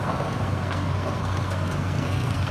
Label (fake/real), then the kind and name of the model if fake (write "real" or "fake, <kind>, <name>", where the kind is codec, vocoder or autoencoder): fake, codec, SNAC